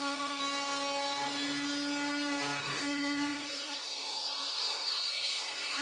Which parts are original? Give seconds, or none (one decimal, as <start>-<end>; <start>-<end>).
0.4-2.6

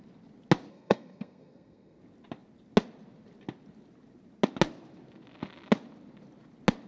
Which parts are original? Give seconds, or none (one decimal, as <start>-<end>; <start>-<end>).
0.0-0.7; 2.0-6.9

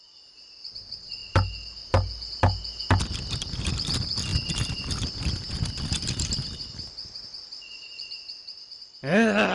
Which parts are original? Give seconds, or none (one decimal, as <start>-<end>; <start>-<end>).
0.0-9.5

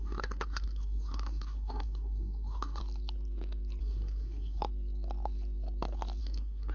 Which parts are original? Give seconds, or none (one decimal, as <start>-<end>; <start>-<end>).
2.8-3.8; 4.6-6.2

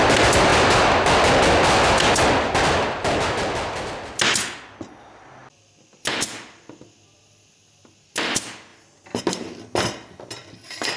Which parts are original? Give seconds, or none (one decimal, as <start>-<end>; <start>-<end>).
0.0-11.0

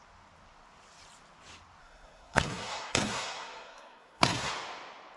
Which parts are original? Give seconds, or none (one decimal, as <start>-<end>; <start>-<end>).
0.0-1.8; 4.5-5.2